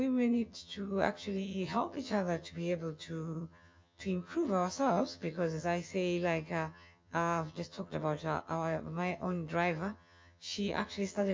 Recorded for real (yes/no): no